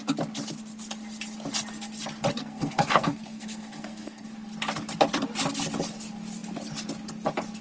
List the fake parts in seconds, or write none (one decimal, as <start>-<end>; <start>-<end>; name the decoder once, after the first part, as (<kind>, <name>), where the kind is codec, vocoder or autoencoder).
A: 2.4-4.3 (codec, SNAC)